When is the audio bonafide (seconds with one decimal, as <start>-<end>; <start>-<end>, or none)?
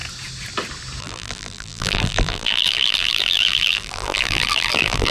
0.0-1.0